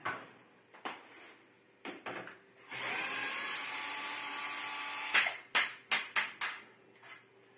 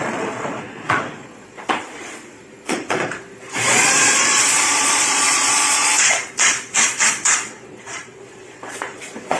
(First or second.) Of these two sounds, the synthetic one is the second